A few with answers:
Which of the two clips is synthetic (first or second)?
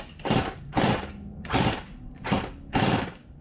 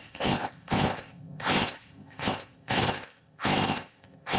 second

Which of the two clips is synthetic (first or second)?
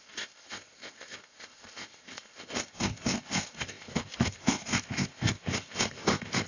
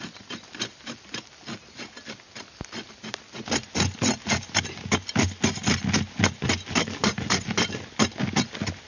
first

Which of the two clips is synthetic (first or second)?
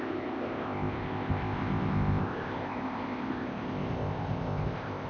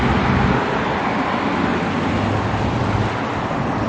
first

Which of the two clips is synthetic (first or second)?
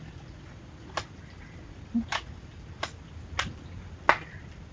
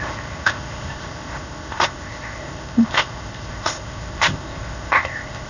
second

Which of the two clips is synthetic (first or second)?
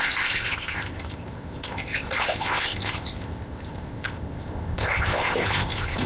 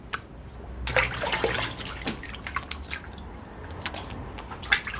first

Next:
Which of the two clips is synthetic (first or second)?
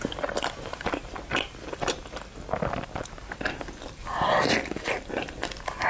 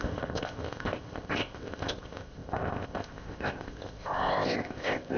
second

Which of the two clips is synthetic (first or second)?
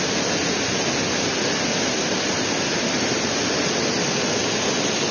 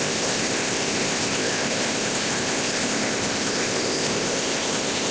second